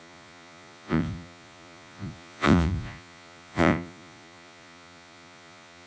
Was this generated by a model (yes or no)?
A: yes